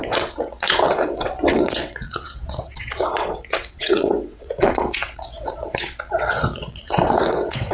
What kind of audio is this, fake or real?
fake